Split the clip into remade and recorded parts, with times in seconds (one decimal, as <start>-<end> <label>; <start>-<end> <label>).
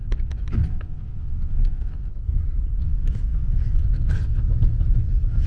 0.0-2.1 recorded; 2.1-2.8 remade; 2.8-5.5 recorded